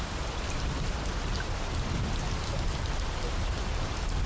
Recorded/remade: recorded